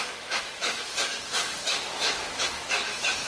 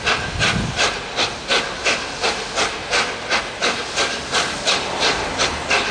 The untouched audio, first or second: second